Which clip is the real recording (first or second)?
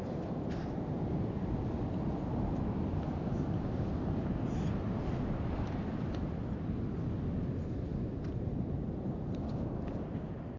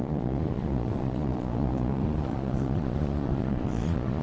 first